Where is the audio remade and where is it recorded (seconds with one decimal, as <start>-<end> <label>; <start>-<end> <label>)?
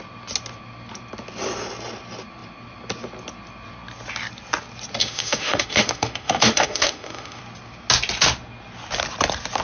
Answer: 0.0-5.0 recorded; 5.0-7.4 remade; 7.4-9.6 recorded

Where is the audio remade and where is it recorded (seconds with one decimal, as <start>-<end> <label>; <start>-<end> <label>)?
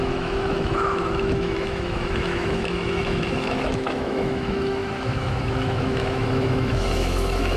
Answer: 0.0-7.6 remade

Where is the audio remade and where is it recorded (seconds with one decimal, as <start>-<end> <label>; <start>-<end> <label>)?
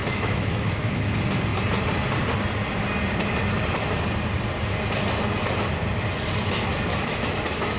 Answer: 0.0-1.0 remade; 1.0-6.9 recorded; 6.9-7.8 remade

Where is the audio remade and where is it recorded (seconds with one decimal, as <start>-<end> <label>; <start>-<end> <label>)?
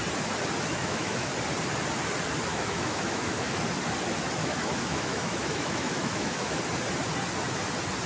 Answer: 0.0-0.7 recorded; 0.7-1.3 remade; 1.3-2.5 recorded; 2.5-3.6 remade; 3.6-4.4 recorded; 4.4-6.6 remade; 6.6-8.1 recorded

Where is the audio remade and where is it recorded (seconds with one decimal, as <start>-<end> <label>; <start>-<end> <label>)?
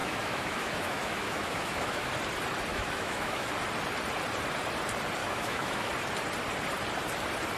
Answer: 0.0-2.1 remade; 2.1-2.7 recorded; 2.7-3.5 remade; 3.5-5.2 recorded; 5.2-5.9 remade; 5.9-7.6 recorded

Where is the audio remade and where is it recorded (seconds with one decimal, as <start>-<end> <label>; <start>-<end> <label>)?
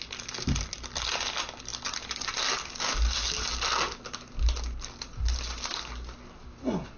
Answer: 0.0-7.0 recorded